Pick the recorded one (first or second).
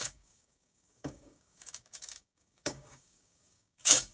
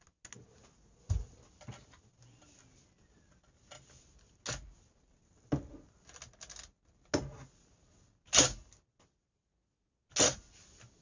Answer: second